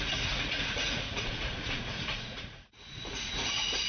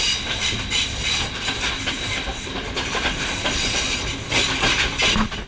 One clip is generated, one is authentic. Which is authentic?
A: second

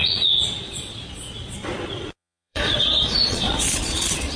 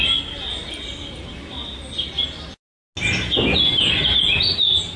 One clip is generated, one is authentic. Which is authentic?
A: second